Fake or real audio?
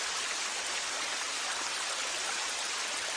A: real